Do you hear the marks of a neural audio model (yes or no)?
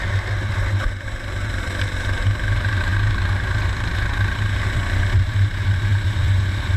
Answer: no